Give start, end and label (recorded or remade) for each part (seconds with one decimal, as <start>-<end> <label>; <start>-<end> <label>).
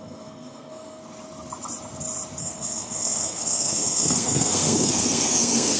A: 0.0-1.0 remade; 1.0-2.4 recorded; 2.4-5.8 remade